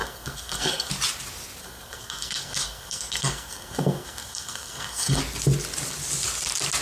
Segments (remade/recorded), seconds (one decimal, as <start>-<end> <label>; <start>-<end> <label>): 0.0-0.9 remade; 0.9-1.6 recorded; 1.6-5.2 remade; 5.2-6.8 recorded